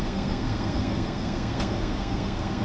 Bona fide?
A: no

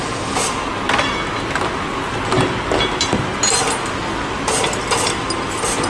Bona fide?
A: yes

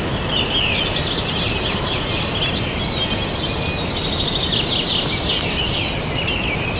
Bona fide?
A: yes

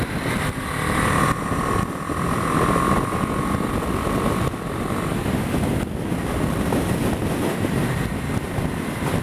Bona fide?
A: yes